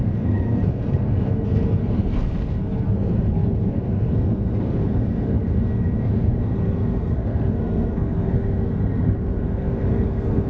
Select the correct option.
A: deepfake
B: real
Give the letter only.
A